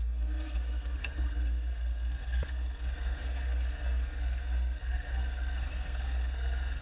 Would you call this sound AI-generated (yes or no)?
yes